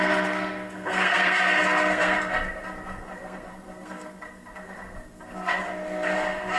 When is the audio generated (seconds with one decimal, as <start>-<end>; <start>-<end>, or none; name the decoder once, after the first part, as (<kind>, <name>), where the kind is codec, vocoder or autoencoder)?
0.0-6.6 (codec, SNAC)